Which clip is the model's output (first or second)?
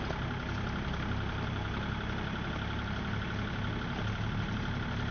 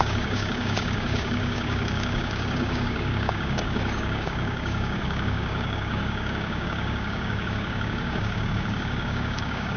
second